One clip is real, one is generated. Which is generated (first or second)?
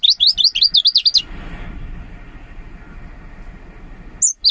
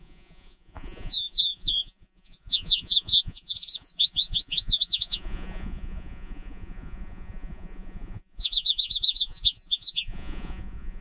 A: second